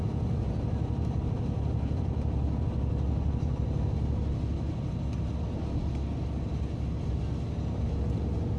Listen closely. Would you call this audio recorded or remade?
recorded